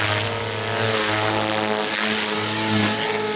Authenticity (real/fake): real